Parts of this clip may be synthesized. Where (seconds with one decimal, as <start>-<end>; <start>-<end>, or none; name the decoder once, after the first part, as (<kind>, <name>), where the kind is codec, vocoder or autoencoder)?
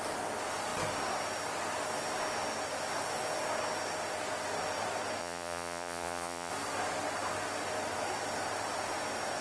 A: 5.2-6.5 (vocoder, Vocos)